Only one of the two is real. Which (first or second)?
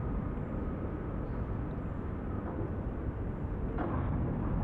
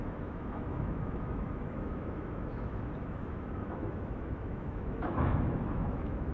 first